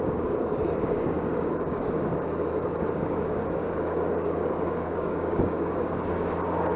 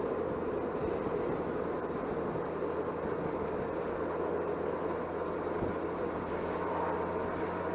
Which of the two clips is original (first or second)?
second